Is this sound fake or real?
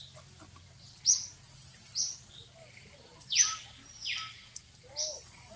real